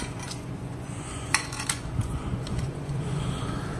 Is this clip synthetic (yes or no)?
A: yes